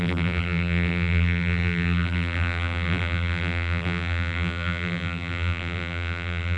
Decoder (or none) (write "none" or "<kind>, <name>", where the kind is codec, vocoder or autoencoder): vocoder, BigVGAN v2